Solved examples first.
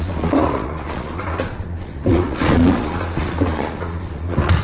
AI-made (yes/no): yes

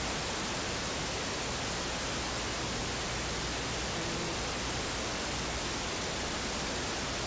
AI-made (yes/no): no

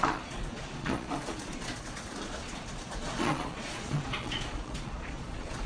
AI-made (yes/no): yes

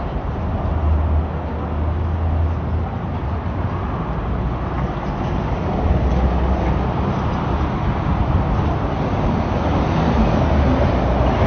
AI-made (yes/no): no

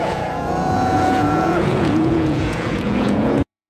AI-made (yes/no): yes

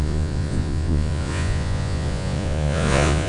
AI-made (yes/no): yes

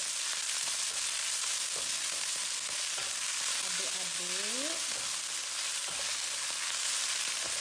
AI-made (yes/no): no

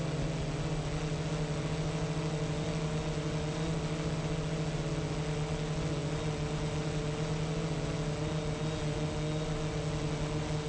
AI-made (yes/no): no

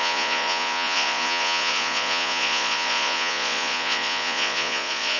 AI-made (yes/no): yes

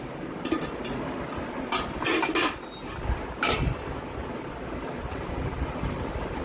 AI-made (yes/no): no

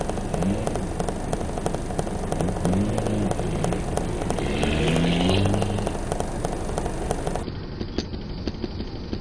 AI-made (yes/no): no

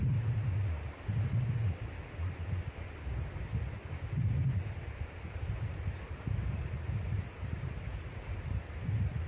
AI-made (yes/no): no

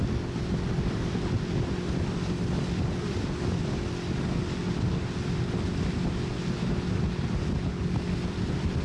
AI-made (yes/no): no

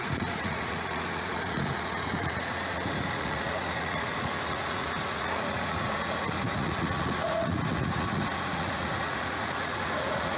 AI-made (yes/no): yes